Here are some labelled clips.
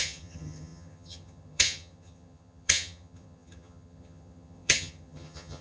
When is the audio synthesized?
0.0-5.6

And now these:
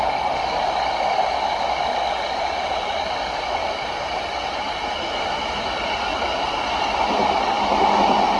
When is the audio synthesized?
3.6-5.5; 6.1-6.6